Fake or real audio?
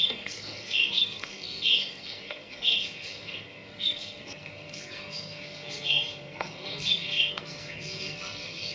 fake